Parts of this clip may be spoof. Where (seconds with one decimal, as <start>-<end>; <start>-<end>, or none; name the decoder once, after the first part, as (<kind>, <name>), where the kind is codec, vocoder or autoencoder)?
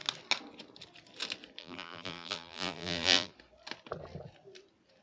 1.6-3.3 (vocoder, BigVGAN v2)